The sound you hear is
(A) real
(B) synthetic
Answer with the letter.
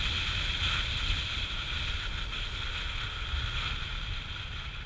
A